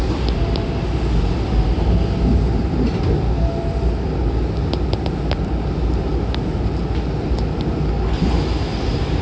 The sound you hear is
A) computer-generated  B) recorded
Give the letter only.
B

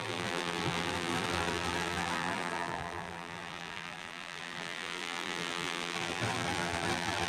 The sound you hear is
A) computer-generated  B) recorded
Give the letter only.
A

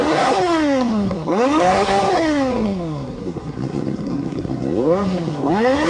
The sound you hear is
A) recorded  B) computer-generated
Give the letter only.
B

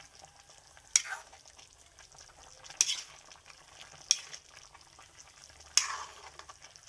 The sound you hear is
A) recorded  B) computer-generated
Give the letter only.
A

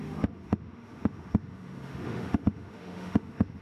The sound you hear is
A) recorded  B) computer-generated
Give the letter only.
B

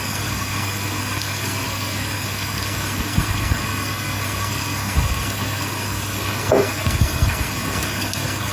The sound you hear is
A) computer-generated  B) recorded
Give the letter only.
A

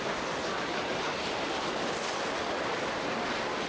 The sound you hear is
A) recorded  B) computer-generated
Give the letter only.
A